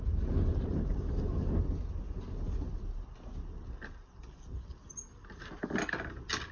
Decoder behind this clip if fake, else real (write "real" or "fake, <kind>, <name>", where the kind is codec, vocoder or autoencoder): real